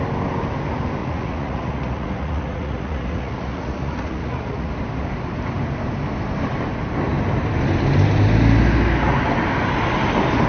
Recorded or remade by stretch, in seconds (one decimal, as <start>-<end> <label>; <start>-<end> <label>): 0.0-1.0 recorded; 1.0-4.7 remade; 4.7-10.5 recorded